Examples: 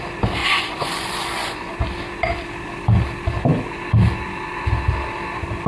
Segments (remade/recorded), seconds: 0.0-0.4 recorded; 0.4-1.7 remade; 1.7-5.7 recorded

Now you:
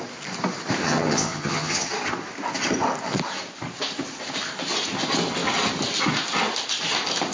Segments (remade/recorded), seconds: 0.0-0.8 recorded; 0.8-1.9 remade; 1.9-7.3 recorded

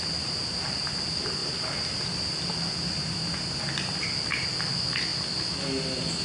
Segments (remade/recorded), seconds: 0.0-6.2 recorded

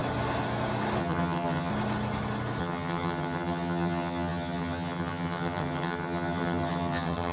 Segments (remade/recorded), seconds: 0.0-1.0 recorded; 1.0-1.7 remade; 1.7-2.6 recorded; 2.6-7.3 remade

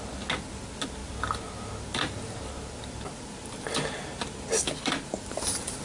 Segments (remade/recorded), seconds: 0.0-5.8 recorded

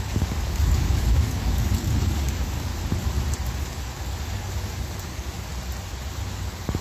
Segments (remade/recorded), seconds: 0.0-2.7 remade; 2.7-3.6 recorded; 3.6-5.5 remade; 5.5-6.3 recorded; 6.3-6.8 remade